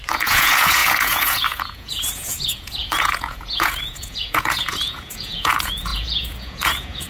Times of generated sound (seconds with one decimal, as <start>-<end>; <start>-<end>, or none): 0.0-7.1